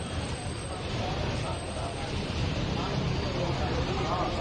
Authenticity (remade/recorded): remade